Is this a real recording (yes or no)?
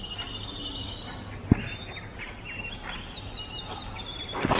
yes